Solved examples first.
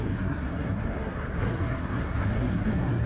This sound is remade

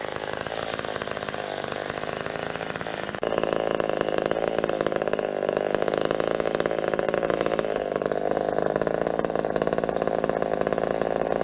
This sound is recorded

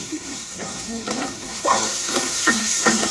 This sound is remade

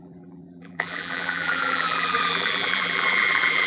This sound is remade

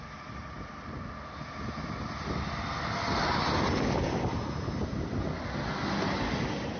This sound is recorded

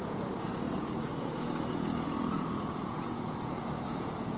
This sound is remade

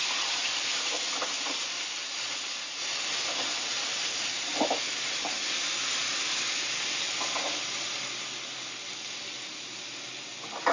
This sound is recorded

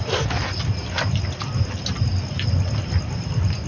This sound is recorded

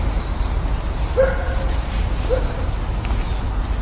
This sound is recorded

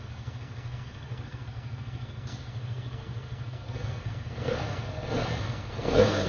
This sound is remade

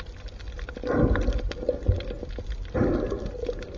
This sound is recorded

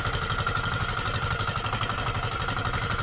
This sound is recorded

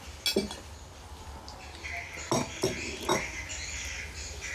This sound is recorded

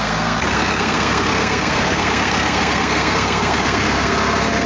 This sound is remade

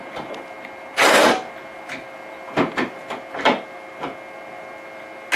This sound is recorded